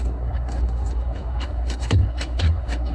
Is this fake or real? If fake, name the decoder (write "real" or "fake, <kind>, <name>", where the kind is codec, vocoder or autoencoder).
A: fake, codec, SNAC